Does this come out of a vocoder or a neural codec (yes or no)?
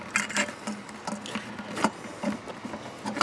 no